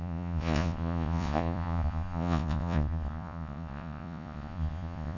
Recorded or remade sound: remade